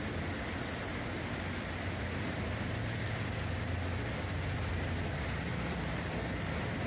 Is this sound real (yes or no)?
yes